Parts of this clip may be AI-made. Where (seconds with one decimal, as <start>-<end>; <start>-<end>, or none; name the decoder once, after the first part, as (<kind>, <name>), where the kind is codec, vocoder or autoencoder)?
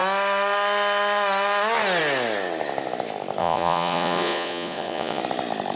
3.4-5.2 (vocoder, Vocos)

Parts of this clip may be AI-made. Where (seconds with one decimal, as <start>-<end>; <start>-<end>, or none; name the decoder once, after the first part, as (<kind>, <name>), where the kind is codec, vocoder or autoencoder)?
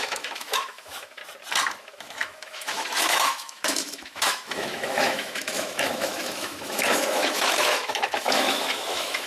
0.0-1.2 (autoencoder, DAC-VAE); 1.8-9.3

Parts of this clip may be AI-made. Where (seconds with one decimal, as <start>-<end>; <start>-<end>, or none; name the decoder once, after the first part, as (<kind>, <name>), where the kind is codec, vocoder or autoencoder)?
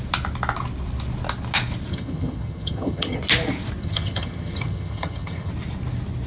1.9-3.2 (vocoder, HiFi-GAN); 3.8-5.5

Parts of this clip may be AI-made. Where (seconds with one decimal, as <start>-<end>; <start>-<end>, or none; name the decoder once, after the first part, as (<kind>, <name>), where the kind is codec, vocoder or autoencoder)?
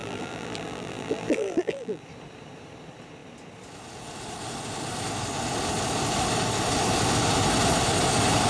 0.0-2.0 (vocoder, BigVGAN v2)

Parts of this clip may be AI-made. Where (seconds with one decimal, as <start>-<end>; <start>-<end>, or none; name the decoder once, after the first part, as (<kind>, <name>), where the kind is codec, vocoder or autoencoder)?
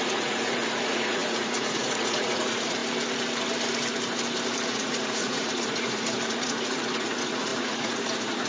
0.0-2.8 (vocoder, Vocos); 4.7-8.5